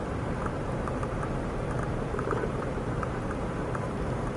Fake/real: fake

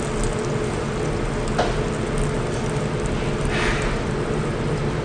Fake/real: real